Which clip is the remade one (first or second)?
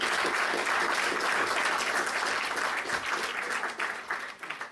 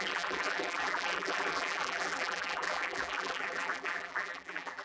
second